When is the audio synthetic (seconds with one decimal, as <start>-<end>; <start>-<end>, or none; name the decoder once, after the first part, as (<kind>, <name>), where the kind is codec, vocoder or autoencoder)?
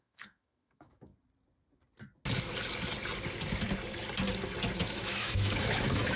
0.0-1.1 (autoencoder, DAC-VAE); 4.8-6.2